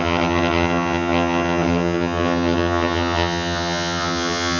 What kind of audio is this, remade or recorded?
remade